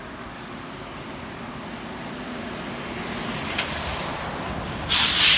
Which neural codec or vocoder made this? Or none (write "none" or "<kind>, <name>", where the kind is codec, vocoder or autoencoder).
none